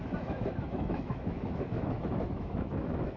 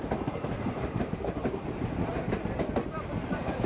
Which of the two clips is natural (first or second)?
second